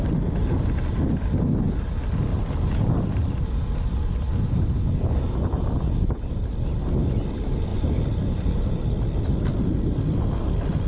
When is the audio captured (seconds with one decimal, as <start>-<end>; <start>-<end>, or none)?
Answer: 0.0-2.3; 2.9-7.7; 8.7-10.9